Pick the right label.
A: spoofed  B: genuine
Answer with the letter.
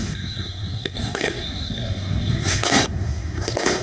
A